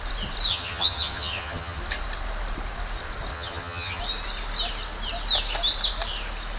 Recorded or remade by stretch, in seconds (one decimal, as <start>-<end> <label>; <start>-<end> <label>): 0.0-0.5 recorded; 0.5-1.8 remade; 1.8-3.3 recorded; 3.3-4.0 remade; 4.0-6.6 recorded

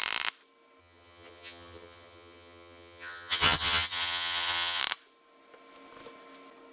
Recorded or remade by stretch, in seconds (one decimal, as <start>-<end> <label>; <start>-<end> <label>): 0.0-0.8 recorded; 0.8-4.8 remade; 4.8-6.7 recorded

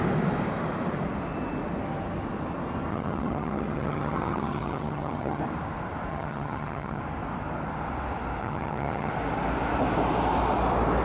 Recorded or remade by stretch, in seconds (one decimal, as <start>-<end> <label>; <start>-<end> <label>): 0.0-2.9 recorded; 2.9-5.4 remade; 5.4-6.1 recorded; 6.1-7.0 remade; 7.0-8.4 recorded; 8.4-9.1 remade; 9.1-11.0 recorded

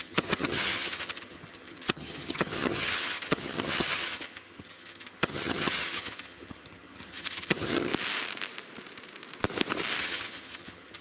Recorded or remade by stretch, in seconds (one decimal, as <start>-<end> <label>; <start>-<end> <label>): 0.0-7.9 remade; 7.9-10.0 recorded; 10.0-11.0 remade